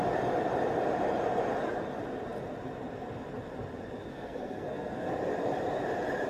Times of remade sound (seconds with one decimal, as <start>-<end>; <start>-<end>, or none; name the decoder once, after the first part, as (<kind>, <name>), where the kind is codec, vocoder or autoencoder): 4.1-5.1 (codec, SNAC)